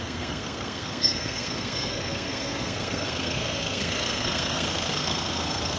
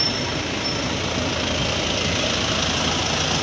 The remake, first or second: first